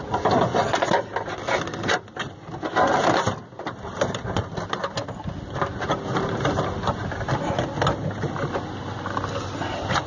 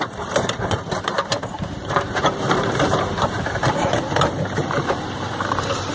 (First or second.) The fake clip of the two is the second